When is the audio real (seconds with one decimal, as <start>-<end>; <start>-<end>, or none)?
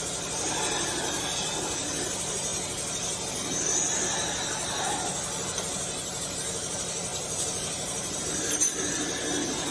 0.0-9.7